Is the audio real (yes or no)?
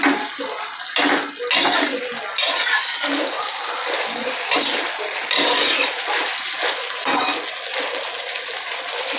yes